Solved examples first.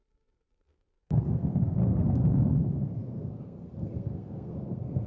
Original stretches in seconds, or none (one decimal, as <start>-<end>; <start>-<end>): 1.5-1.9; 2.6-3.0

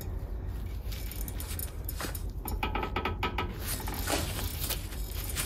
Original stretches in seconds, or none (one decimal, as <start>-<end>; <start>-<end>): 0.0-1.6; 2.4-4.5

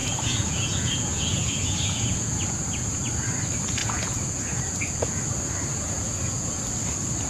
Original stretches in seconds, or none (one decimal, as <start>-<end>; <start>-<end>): 3.0-3.8; 5.2-5.7; 6.6-7.3

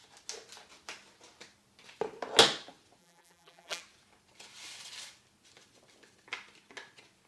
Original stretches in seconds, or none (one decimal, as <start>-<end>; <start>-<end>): 0.0-3.0; 3.8-7.3

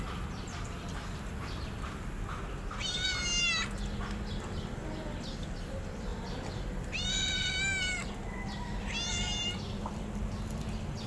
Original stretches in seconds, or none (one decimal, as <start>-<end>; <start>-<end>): 7.7-8.8

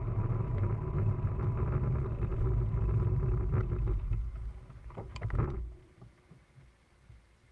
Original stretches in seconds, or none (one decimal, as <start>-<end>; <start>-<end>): 0.0-7.5

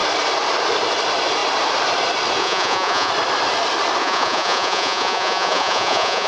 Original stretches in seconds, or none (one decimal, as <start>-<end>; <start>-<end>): 0.0-2.4; 3.1-4.0

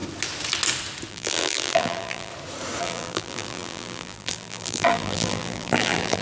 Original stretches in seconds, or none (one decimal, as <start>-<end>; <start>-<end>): 0.0-1.1; 2.3-2.8